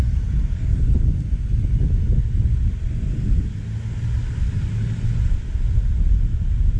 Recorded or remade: recorded